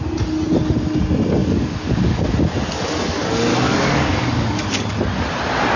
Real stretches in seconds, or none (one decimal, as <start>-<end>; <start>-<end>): 0.0-1.4; 2.3-3.5; 4.7-5.8